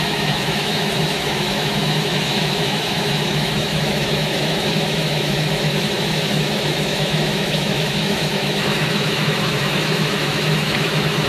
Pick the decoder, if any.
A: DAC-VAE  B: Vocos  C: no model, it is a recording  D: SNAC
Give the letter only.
A